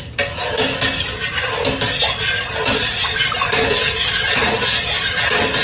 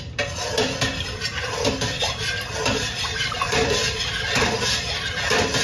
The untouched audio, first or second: first